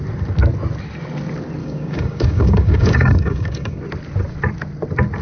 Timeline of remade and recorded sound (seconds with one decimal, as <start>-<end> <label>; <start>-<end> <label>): 0.0-1.6 recorded; 1.6-3.8 remade; 3.8-5.2 recorded